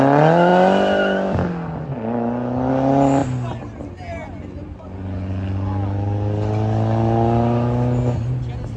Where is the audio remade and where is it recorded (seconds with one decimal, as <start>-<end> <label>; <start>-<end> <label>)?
0.0-8.8 recorded